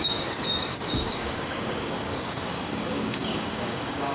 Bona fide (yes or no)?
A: no